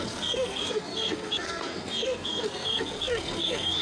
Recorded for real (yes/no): no